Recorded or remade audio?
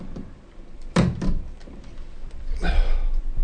recorded